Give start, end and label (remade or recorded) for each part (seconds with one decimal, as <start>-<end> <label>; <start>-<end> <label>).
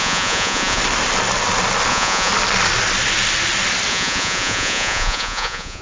0.0-0.8 remade; 0.8-1.9 recorded; 1.9-2.3 remade; 2.3-3.9 recorded; 3.9-5.8 remade